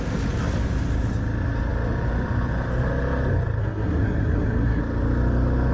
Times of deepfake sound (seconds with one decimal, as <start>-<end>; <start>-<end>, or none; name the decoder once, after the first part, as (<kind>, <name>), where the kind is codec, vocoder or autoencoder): 3.6-4.8 (codec, SNAC)